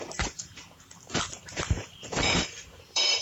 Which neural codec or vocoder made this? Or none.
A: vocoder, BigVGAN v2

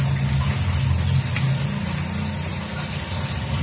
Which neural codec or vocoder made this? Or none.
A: none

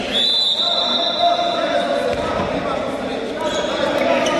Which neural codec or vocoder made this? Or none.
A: none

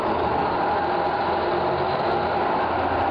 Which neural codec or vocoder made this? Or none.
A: none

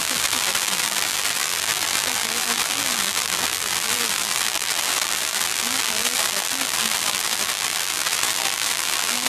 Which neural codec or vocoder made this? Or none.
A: vocoder, BigVGAN v2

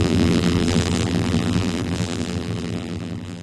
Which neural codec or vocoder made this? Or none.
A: vocoder, BigVGAN v2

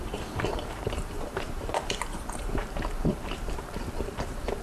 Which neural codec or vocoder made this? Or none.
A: vocoder, BigVGAN v2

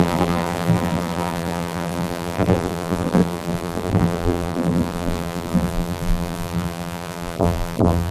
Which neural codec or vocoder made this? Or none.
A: vocoder, BigVGAN v2